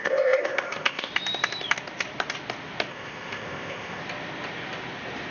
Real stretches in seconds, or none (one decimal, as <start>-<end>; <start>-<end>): 1.1-2.9; 4.0-5.3